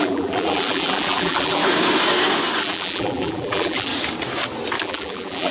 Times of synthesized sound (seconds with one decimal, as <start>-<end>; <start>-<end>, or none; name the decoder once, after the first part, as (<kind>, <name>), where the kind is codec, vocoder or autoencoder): 0.0-1.6 (vocoder, BigVGAN v2); 2.6-3.9; 4.8-5.5